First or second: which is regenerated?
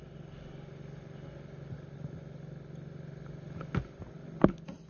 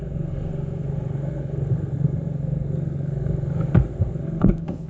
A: second